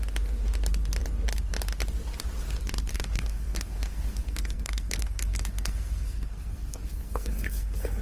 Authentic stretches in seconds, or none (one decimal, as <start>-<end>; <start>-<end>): 0.0-2.9